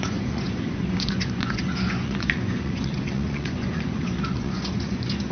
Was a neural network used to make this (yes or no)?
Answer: yes